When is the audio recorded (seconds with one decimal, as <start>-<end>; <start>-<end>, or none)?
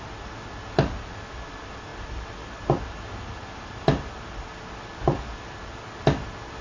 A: 0.0-6.6